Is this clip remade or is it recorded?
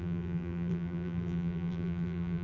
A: remade